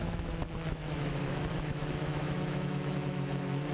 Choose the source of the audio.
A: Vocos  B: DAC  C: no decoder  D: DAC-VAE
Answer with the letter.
D